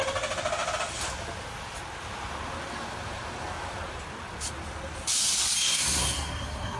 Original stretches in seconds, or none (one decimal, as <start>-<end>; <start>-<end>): 0.0-5.6